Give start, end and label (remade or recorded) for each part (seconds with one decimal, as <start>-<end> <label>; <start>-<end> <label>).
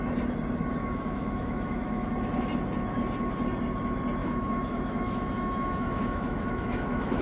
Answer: 0.0-0.8 recorded; 0.8-2.1 remade; 2.1-4.2 recorded; 4.2-7.2 remade